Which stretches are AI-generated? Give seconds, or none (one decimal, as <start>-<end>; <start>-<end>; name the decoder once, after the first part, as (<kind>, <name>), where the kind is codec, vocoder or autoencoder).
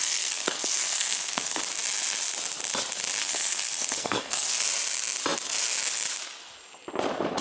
0.0-1.6 (codec, SNAC); 3.2-4.6